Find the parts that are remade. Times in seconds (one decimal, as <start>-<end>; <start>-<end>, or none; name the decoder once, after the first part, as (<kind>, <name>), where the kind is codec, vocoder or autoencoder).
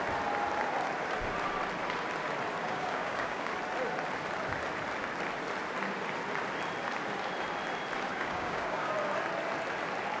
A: 2.6-3.5 (codec, DAC); 8.1-8.9